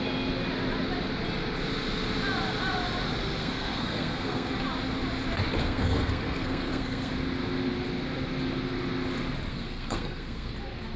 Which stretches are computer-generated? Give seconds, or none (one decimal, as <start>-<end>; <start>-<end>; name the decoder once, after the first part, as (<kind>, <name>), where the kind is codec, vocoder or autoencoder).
3.4-4.5 (codec, SNAC); 5.6-7.1; 9.5-10.5

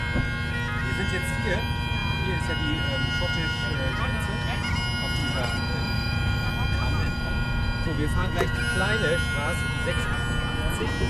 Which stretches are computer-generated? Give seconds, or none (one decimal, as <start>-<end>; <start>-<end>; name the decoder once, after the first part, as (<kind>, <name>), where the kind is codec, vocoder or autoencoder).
5.2-6.5 (vocoder, Vocos); 7.0-8.6

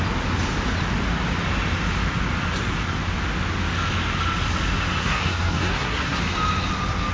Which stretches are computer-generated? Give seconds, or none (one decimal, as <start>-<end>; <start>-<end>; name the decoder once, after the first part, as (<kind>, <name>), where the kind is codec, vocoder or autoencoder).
5.0-6.2 (codec, SNAC)

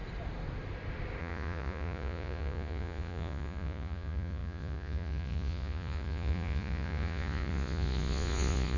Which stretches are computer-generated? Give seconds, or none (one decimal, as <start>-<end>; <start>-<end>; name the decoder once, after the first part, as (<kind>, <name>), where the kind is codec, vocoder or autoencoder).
1.2-8.8 (vocoder, Vocos)

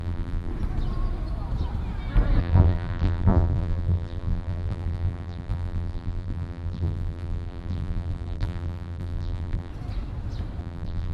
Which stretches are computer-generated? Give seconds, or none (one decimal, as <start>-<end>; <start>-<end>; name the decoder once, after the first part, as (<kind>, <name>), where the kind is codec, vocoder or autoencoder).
0.0-0.5 (vocoder, BigVGAN v2); 2.4-9.7; 10.6-11.1

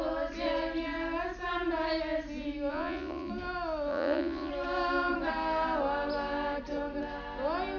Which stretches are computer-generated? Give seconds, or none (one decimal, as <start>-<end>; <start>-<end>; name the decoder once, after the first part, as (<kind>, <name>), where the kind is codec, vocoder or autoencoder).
2.7-3.3 (vocoder, Vocos); 3.9-4.5

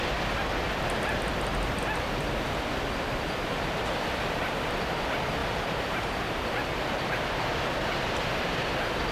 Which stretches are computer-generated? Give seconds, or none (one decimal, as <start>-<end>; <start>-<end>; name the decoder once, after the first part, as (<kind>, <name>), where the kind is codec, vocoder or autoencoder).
5.4-7.8 (vocoder, BigVGAN v2)